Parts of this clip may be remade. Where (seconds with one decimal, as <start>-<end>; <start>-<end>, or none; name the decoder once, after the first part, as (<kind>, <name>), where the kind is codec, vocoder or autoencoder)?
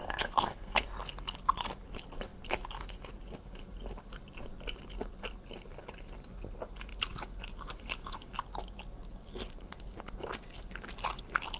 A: 0.0-0.8 (codec, SNAC)